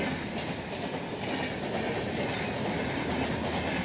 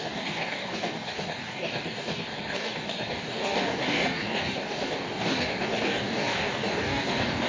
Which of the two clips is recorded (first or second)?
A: first